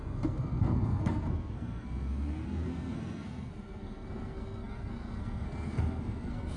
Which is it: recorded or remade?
remade